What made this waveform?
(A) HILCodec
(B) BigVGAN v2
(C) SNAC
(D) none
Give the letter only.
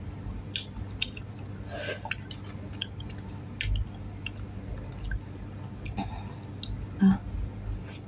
D